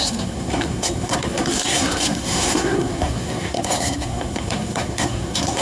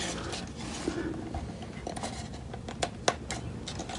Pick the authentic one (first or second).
second